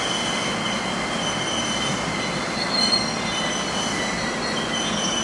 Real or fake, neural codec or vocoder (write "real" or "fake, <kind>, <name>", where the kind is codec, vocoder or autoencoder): real